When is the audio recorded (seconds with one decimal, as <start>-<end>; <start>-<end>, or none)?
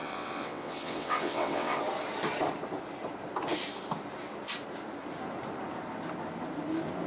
1.8-7.1